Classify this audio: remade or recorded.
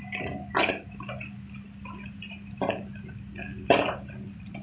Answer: recorded